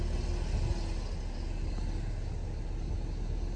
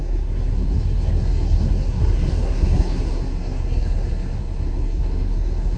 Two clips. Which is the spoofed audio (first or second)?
second